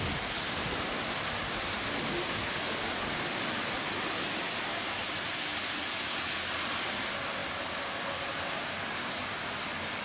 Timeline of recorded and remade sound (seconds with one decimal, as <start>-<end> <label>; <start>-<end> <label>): 0.0-10.0 recorded